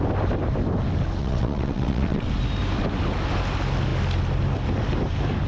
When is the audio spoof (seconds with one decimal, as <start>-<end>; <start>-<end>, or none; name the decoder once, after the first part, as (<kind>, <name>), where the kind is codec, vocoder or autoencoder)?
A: 1.2-2.3 (vocoder, WaveNeXt)